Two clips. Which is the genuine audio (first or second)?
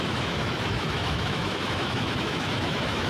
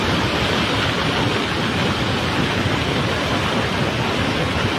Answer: second